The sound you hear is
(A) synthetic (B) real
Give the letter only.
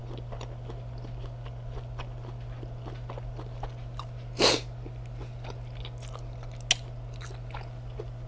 B